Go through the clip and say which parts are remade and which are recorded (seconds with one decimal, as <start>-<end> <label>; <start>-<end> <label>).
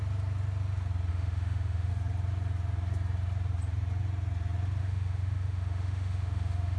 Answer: 0.0-1.1 recorded; 1.1-1.9 remade; 1.9-4.8 recorded; 4.8-6.8 remade